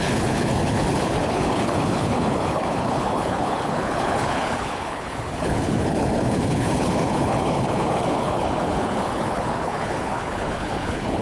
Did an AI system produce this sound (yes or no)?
yes